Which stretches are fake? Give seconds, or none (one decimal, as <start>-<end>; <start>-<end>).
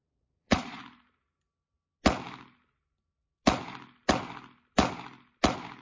0.0-0.8